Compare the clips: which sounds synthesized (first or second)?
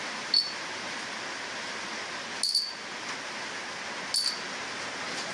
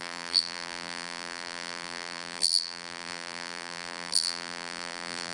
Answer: second